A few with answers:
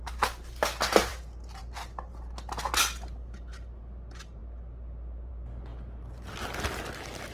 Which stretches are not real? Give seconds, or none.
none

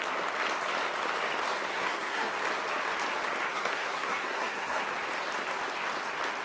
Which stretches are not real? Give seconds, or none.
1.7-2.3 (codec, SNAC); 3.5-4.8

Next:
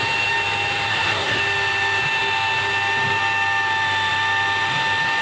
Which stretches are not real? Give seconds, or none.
0.9-1.4 (codec, SNAC)

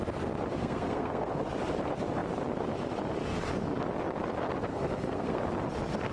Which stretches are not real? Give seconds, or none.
0.6-1.3 (codec, SNAC); 4.7-5.4